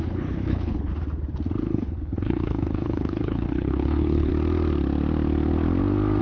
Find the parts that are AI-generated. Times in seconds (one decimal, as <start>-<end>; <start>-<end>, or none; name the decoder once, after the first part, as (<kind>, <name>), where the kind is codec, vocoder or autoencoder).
0.0-0.9 (codec, HILCodec); 1.6-4.3